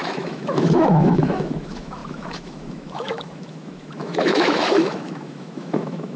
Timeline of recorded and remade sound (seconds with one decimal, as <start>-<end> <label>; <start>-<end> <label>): 0.0-6.2 remade

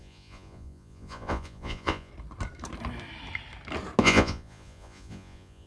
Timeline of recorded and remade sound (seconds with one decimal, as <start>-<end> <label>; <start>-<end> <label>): 0.0-2.1 remade; 2.1-4.0 recorded; 4.0-5.7 remade

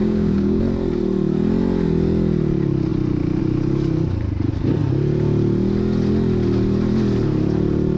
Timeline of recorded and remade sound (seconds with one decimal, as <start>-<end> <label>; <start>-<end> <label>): 0.0-0.6 remade; 0.6-8.0 recorded

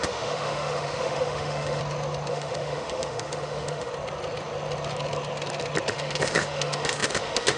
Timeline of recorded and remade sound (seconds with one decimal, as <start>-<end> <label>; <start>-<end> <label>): 0.0-1.8 remade; 1.8-2.3 recorded; 2.3-3.9 remade; 3.9-5.9 recorded; 5.9-7.6 remade